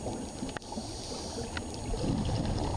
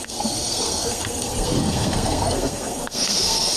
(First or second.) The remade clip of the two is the second